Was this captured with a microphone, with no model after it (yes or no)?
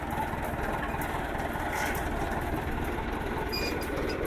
yes